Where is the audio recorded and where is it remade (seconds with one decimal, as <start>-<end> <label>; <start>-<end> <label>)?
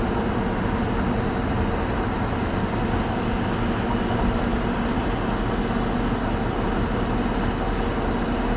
0.0-8.6 recorded